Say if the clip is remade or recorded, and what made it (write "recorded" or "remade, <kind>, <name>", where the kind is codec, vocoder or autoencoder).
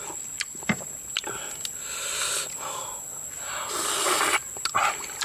recorded